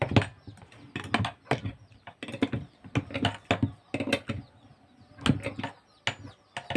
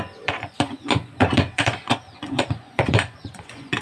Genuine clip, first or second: first